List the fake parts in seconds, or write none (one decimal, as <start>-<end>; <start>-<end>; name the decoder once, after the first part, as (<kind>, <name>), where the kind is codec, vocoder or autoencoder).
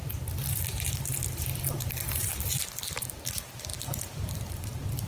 0.0-3.7 (vocoder, BigVGAN v2); 4.3-5.1